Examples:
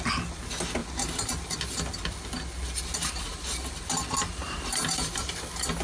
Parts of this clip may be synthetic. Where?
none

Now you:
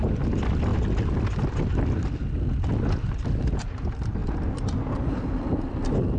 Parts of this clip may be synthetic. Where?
none

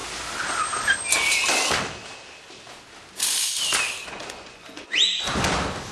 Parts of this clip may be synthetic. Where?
4.0-5.0 (vocoder, Vocos)

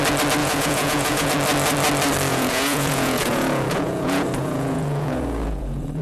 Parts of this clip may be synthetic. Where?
0.4-1.3 (vocoder, Vocos); 2.3-6.0